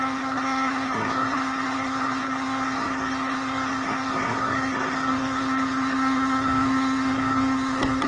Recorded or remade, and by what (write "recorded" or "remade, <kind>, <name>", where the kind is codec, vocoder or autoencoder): remade, codec, SNAC